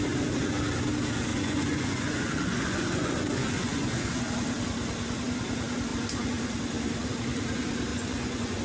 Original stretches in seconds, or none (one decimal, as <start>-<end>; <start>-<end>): 0.0-1.3; 4.2-7.9